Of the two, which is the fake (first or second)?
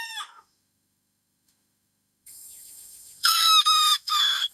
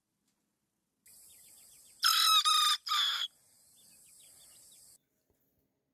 first